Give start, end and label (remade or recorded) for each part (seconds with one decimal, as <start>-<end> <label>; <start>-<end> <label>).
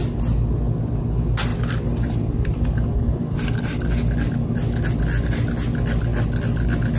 0.0-7.0 recorded